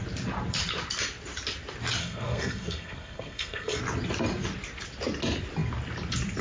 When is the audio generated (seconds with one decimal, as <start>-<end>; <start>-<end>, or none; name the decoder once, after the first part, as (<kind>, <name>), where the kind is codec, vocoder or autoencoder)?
2.0-3.8 (codec, SNAC)